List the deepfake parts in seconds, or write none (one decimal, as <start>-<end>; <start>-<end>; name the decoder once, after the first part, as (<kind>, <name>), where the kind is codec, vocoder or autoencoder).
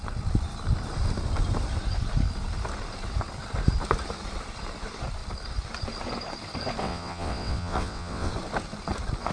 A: 6.8-8.3 (vocoder, WaveNeXt)